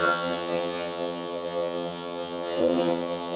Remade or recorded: remade